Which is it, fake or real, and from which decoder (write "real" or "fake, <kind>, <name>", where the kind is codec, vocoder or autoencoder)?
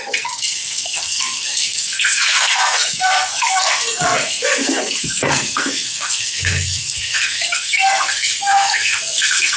fake, codec, SNAC